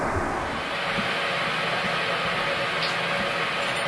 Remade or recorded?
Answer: recorded